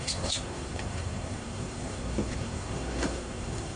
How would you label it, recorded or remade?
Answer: remade